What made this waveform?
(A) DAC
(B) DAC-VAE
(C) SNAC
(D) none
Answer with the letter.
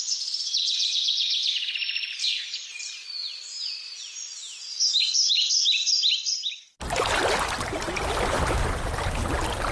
D